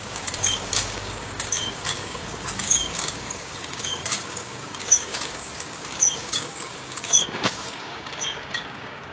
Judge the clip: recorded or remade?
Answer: remade